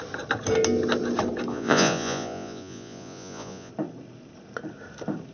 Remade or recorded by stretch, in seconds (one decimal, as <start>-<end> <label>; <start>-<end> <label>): 0.0-1.5 recorded; 1.5-3.7 remade; 3.7-5.3 recorded